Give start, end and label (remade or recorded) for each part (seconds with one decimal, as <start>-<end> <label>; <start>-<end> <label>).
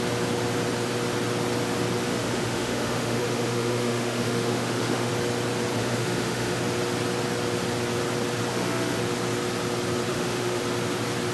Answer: 0.0-2.1 recorded; 2.1-5.1 remade; 5.1-5.8 recorded; 5.8-6.6 remade; 6.6-8.5 recorded; 8.5-9.0 remade; 9.0-10.1 recorded; 10.1-10.6 remade; 10.6-11.3 recorded